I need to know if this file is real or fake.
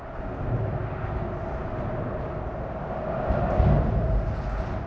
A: real